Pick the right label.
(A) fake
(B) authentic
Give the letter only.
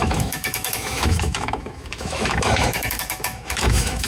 A